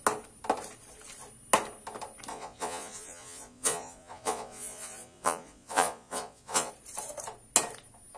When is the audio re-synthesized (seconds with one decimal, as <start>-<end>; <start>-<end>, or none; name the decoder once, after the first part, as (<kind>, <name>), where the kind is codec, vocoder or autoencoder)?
2.3-6.7 (vocoder, Vocos)